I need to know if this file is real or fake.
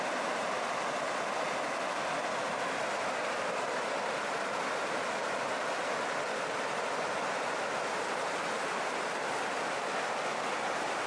real